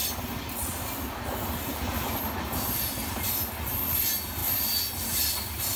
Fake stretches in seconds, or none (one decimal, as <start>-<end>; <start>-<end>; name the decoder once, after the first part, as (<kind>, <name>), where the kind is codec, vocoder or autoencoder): none